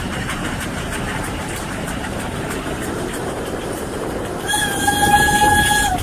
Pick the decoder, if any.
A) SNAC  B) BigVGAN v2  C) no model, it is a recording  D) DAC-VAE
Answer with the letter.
B